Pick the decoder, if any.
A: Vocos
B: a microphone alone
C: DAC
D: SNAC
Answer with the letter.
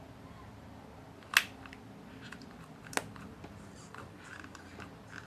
B